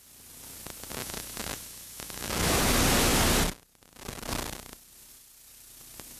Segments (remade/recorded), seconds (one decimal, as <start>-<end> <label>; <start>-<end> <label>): 0.0-1.0 recorded; 1.0-2.7 remade; 2.7-6.2 recorded